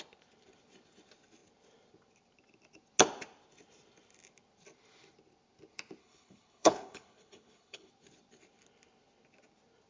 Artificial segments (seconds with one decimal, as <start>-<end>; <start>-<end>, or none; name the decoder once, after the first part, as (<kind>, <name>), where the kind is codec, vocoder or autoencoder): 6.0-7.9 (codec, HILCodec)